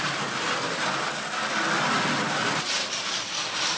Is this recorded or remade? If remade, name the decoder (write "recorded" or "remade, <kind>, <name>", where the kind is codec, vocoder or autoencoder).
recorded